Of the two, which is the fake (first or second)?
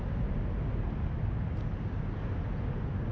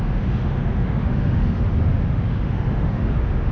second